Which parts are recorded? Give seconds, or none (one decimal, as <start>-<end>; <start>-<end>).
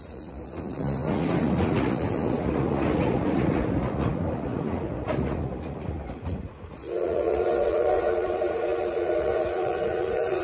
none